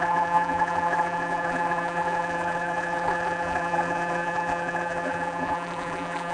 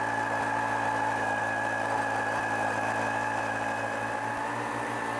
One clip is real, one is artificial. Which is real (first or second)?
second